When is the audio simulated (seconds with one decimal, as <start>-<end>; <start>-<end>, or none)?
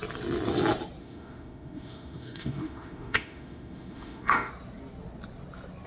1.0-4.5